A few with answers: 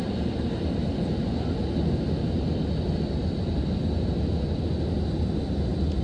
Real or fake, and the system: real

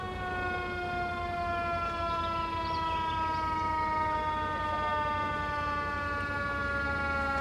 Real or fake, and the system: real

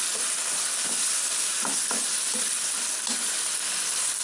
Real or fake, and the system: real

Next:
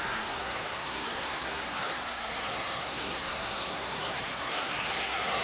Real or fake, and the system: fake, codec, SNAC